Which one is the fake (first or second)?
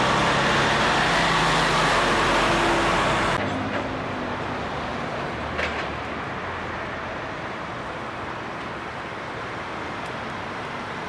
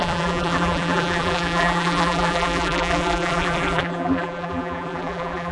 second